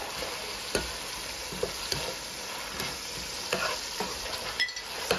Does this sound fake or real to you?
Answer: real